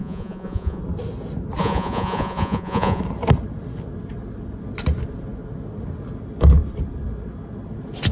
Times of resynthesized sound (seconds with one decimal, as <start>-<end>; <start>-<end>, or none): 0.0-0.8; 1.6-3.0